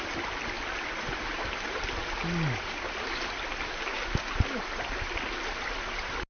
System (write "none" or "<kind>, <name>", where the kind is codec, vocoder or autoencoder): none